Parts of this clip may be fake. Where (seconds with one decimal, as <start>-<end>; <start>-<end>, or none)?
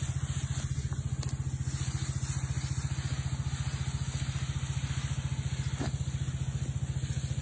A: none